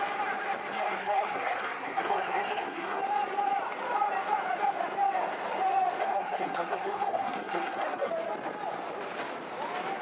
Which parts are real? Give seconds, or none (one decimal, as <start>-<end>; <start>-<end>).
0.0-0.7; 3.0-6.0; 8.1-10.0

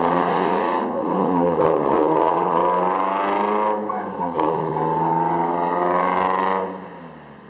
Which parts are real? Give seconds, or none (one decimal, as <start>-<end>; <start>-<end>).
2.6-4.2; 4.7-7.5